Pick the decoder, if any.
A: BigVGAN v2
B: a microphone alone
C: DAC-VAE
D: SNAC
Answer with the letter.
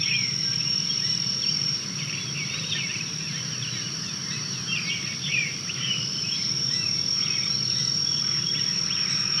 A